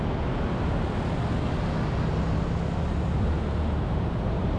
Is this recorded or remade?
recorded